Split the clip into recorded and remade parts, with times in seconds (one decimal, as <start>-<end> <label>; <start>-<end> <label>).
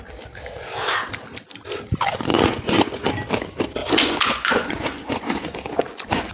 0.0-2.3 recorded; 2.3-3.1 remade; 3.1-3.8 recorded; 3.8-6.3 remade